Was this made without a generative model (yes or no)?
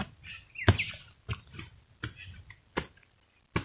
yes